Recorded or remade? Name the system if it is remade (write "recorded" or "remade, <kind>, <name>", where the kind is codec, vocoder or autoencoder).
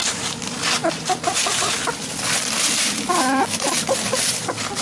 remade, vocoder, BigVGAN v2